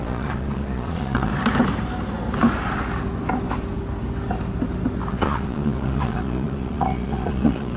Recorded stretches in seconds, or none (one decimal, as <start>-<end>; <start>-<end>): 1.3-5.1